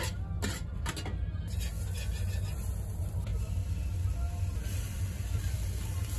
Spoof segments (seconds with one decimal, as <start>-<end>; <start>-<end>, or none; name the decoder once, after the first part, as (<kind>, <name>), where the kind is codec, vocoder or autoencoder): none